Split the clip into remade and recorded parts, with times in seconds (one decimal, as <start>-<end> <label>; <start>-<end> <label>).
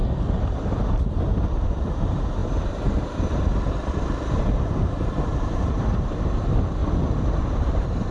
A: 0.0-0.5 recorded; 0.5-6.8 remade; 6.8-7.4 recorded; 7.4-8.1 remade